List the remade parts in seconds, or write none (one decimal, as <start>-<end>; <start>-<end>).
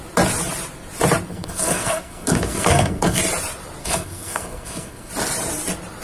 1.3-3.2; 3.8-5.1